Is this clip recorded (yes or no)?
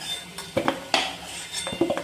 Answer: yes